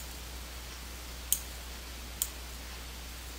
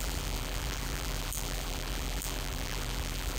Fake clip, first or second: second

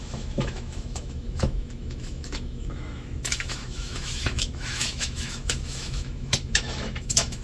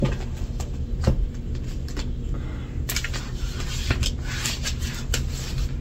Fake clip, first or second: first